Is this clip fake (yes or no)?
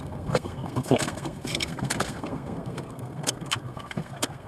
yes